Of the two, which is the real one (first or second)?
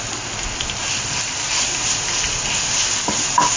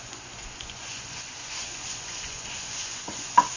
first